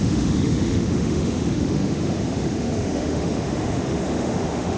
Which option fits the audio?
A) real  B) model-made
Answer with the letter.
B